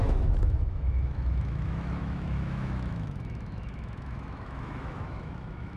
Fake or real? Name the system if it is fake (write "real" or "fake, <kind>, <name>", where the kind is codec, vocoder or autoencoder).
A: fake, autoencoder, DAC-VAE